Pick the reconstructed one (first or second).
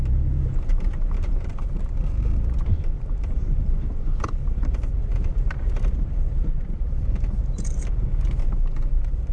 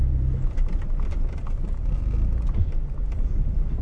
first